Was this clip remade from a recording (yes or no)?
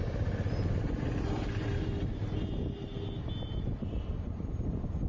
no